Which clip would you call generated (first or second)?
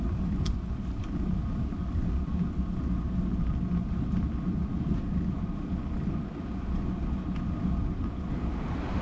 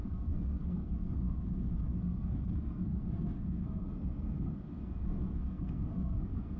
second